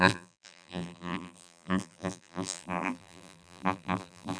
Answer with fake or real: fake